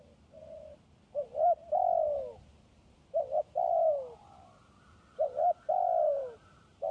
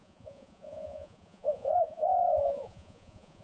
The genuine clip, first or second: first